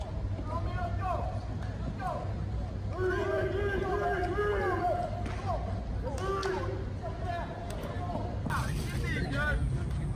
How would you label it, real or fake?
real